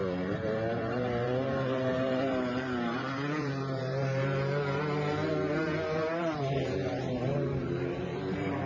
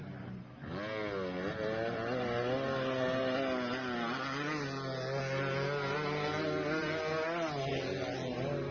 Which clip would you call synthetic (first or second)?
first